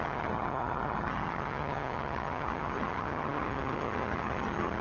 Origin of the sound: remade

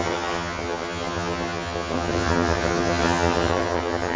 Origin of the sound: remade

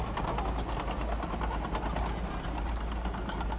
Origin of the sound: recorded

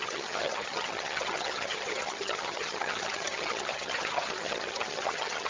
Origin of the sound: remade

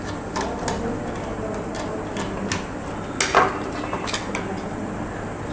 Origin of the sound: recorded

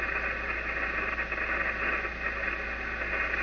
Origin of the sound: recorded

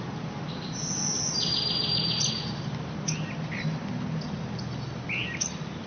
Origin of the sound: recorded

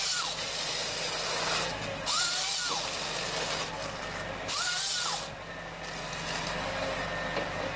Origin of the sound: recorded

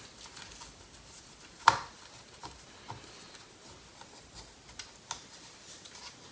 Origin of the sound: recorded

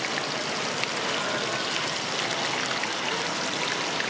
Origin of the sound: recorded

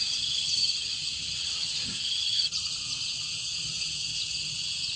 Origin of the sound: remade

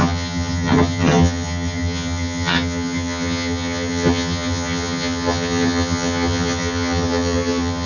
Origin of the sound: remade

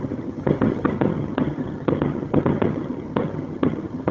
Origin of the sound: remade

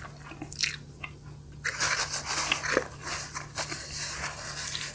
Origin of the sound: recorded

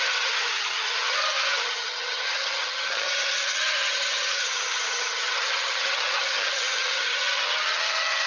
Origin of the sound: remade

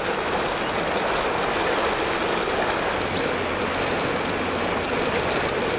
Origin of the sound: recorded